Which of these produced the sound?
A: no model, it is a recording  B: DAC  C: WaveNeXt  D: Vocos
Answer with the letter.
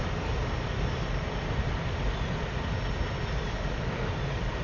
A